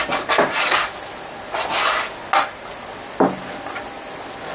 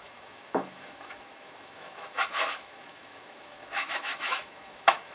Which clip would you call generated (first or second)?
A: second